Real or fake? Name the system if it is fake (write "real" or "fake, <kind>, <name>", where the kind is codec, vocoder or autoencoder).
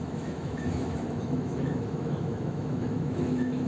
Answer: fake, autoencoder, DAC-VAE